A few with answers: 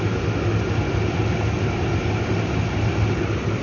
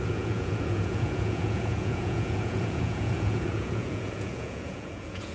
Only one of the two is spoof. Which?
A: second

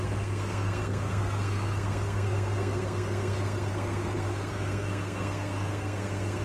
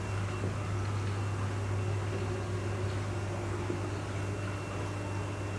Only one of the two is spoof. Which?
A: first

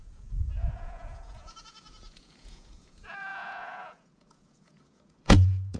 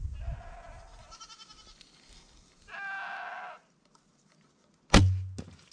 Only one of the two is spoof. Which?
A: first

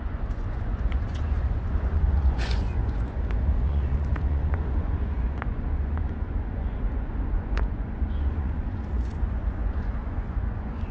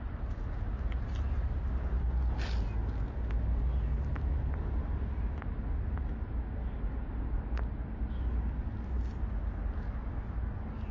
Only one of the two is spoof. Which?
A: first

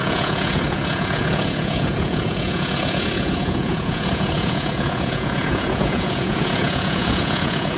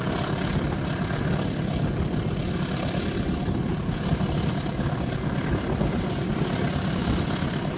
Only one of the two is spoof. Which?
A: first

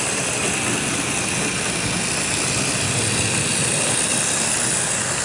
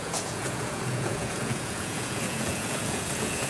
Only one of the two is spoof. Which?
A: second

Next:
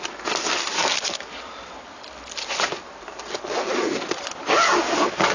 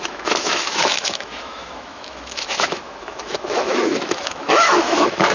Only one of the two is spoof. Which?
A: second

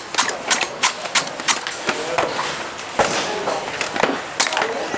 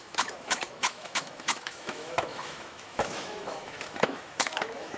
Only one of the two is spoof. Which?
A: second